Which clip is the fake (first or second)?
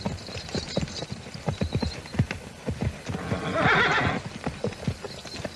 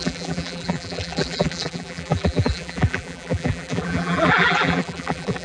second